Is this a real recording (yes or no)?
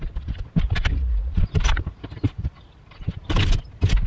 yes